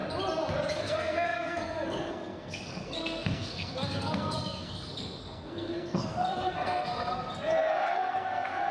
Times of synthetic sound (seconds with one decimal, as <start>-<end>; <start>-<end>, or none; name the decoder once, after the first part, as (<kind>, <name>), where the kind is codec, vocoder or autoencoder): 0.8-8.7 (codec, SNAC)